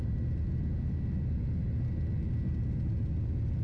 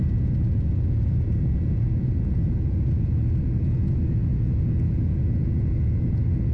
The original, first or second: first